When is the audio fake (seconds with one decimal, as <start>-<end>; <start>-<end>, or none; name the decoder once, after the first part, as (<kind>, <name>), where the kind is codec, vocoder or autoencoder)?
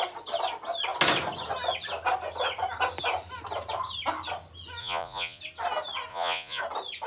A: 4.8-5.4 (vocoder, Vocos); 6.1-6.6